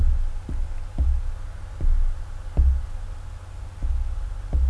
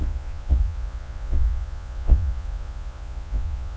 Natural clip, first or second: first